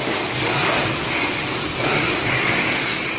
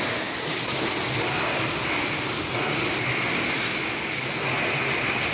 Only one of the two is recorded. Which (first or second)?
second